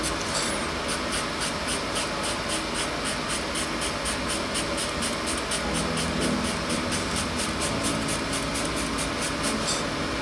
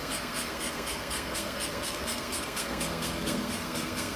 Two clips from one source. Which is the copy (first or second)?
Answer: second